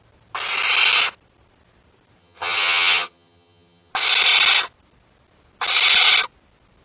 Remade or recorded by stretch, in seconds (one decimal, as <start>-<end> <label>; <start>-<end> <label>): 0.0-2.2 recorded; 2.2-3.9 remade; 3.9-6.8 recorded